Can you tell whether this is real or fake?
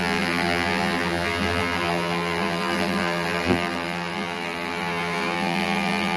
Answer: fake